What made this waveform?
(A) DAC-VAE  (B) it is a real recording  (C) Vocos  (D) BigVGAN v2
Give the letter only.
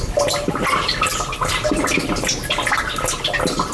B